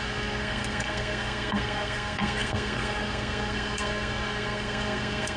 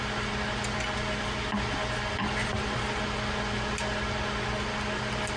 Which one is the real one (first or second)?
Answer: second